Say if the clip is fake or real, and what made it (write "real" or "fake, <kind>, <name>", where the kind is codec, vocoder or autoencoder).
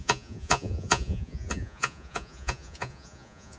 fake, vocoder, Vocos